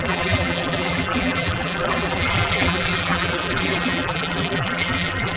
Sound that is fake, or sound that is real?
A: fake